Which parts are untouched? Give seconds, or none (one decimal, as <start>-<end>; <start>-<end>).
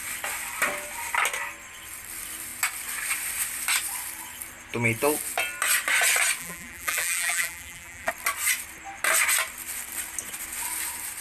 0.0-6.4; 8.1-11.2